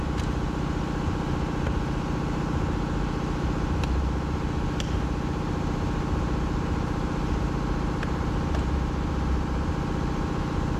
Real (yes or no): yes